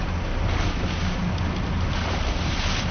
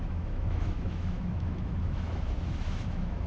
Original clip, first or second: first